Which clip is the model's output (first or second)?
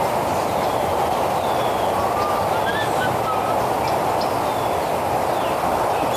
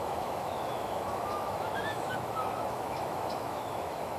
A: second